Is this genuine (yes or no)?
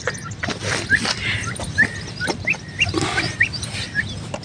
yes